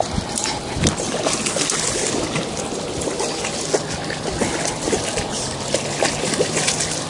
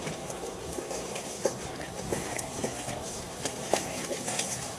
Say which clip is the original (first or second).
first